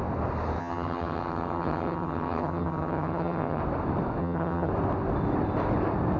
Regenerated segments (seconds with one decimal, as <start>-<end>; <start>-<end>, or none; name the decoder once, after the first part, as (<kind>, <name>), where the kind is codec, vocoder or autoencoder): 0.6-3.6 (vocoder, HiFi-GAN); 4.2-4.7